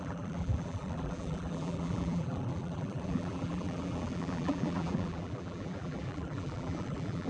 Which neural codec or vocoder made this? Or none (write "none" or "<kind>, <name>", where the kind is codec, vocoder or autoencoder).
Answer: vocoder, BigVGAN v2